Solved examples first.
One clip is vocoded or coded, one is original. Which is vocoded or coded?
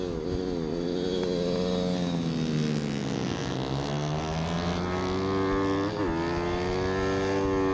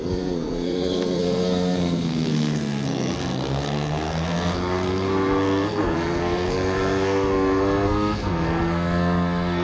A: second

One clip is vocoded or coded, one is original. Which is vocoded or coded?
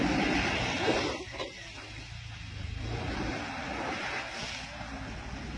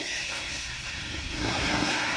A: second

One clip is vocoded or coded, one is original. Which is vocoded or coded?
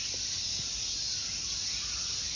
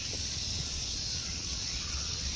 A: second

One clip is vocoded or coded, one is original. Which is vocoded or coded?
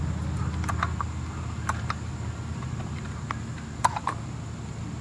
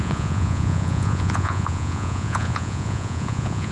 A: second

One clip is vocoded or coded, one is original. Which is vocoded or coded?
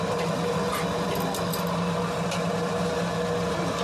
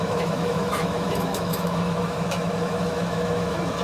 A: second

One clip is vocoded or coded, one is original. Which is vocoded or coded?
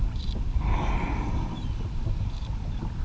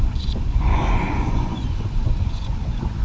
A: second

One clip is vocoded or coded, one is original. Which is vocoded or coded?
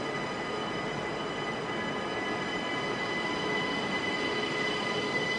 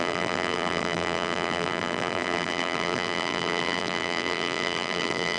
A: second